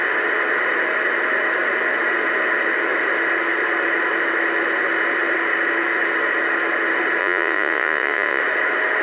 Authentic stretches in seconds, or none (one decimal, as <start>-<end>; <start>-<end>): 0.0-7.2; 8.4-9.0